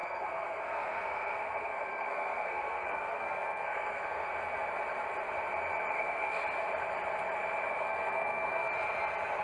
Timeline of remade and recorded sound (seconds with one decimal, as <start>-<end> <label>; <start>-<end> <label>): 0.0-4.3 remade; 4.3-5.9 recorded; 5.9-6.4 remade; 6.4-7.7 recorded; 7.7-8.7 remade; 8.7-9.4 recorded

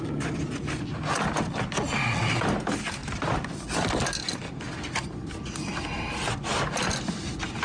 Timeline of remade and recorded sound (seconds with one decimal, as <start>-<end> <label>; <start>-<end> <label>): 0.0-7.6 recorded